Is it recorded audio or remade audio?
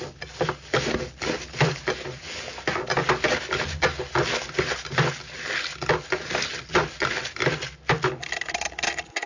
recorded